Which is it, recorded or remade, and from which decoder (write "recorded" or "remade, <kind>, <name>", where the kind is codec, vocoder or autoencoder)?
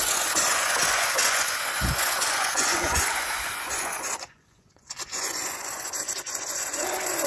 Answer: remade, vocoder, Vocos